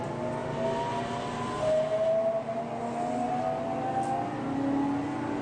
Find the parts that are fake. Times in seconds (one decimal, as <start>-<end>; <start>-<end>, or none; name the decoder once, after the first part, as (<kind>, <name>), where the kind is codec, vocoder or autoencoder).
none